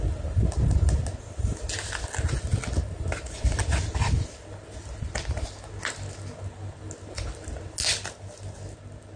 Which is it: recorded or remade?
recorded